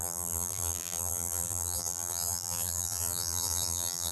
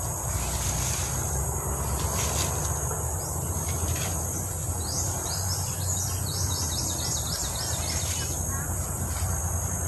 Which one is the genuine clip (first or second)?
second